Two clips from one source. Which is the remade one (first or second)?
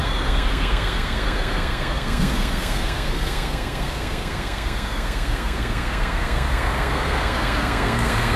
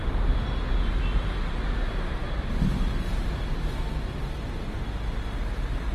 first